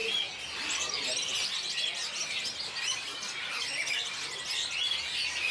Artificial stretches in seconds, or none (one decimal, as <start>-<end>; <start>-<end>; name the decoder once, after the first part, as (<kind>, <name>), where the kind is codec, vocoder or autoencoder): none